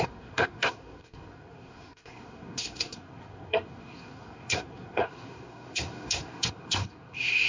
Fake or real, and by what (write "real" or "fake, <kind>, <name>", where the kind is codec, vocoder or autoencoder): fake, codec, SNAC